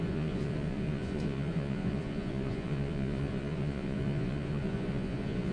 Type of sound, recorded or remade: remade